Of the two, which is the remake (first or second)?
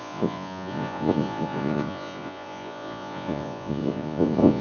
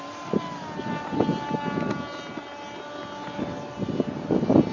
first